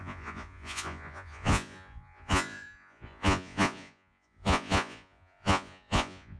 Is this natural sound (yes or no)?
no